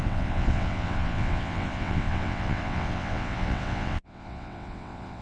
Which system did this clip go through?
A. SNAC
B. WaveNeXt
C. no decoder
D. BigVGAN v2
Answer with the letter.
B